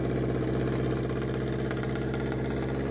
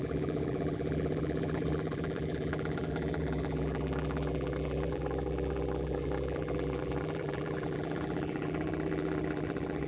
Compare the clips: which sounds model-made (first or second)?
second